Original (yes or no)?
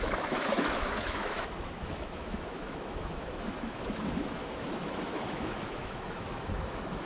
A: no